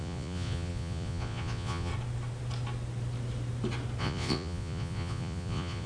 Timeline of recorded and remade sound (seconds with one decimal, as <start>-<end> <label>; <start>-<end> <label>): 0.0-1.9 remade; 1.9-4.0 recorded; 4.0-5.9 remade